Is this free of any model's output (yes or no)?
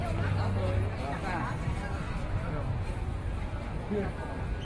yes